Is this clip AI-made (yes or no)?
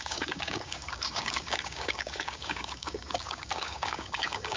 yes